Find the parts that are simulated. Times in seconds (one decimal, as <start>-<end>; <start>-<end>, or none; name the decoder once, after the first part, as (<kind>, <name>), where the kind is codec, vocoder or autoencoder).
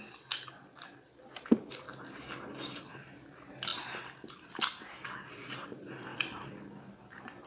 none